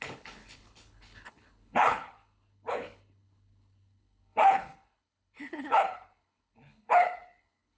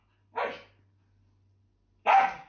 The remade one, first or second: first